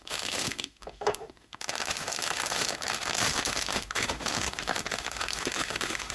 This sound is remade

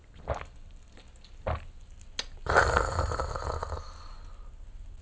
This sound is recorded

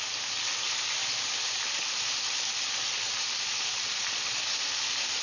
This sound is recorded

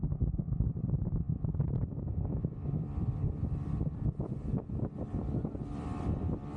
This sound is remade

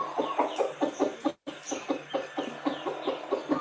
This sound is recorded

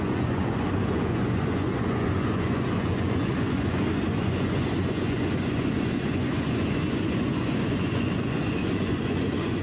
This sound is remade